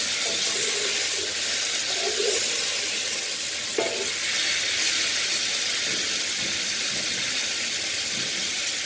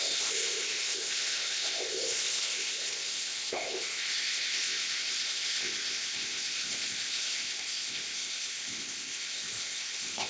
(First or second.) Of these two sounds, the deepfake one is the second